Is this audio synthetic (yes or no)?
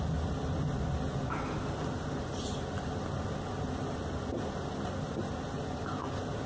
no